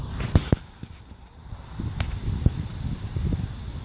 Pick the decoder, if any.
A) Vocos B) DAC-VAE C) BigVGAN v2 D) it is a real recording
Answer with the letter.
D